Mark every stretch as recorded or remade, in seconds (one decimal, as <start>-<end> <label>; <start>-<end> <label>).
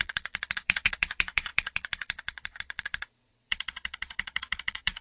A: 0.0-5.0 remade